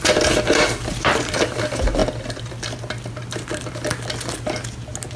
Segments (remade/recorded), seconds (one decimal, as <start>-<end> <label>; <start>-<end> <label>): 0.0-5.2 recorded